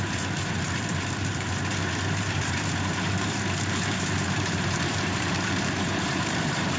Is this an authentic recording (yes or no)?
no